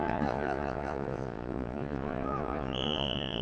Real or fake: fake